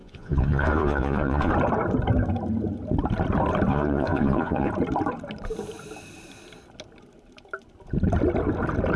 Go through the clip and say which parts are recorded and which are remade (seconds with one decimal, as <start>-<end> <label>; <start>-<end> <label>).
0.0-1.5 remade; 1.5-3.7 recorded; 3.7-4.7 remade; 4.7-9.0 recorded